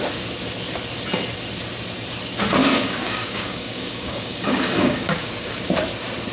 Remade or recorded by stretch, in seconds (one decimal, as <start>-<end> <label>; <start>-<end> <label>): 0.0-2.6 recorded; 2.6-5.6 remade; 5.6-6.3 recorded